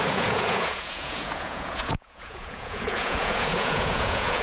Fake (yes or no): yes